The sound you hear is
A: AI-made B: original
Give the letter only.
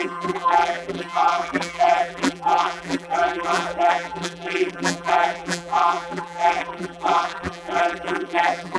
A